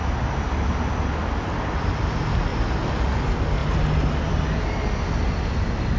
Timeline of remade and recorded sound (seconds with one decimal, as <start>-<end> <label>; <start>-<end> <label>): 0.0-6.0 recorded